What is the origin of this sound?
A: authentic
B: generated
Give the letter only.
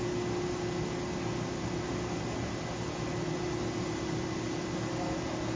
A